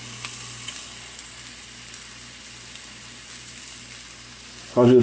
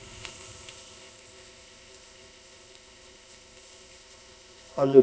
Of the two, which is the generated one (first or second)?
second